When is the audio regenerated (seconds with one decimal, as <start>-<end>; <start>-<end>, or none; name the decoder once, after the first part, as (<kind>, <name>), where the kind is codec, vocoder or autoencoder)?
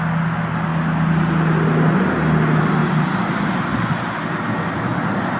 none